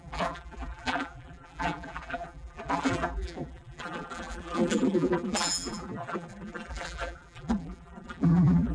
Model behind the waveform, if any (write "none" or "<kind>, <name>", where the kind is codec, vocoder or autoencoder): vocoder, BigVGAN v2